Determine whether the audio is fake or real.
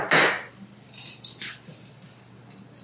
real